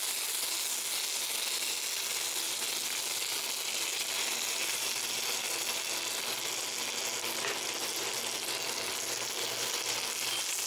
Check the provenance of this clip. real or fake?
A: real